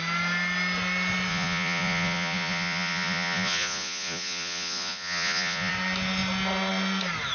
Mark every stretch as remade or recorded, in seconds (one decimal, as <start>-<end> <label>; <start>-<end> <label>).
0.0-1.3 recorded; 1.3-5.7 remade; 5.7-7.3 recorded

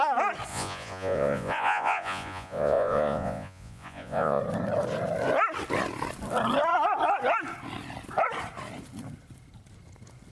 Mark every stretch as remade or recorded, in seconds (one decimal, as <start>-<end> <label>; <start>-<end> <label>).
0.0-0.5 recorded; 0.5-4.4 remade; 4.4-10.3 recorded

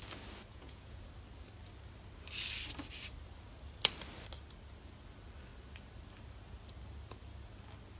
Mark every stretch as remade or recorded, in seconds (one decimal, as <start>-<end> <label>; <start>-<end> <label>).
0.0-0.5 recorded; 0.5-1.1 remade; 1.1-8.0 recorded

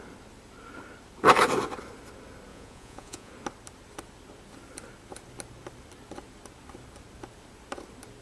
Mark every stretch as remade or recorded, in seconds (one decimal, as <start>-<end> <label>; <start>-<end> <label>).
0.0-2.5 recorded; 2.5-3.3 remade; 3.3-8.2 recorded

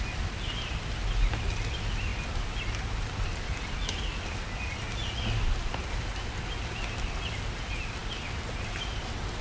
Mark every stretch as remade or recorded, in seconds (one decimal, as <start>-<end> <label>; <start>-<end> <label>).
0.0-9.4 recorded